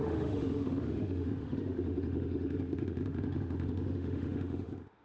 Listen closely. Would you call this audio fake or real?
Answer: fake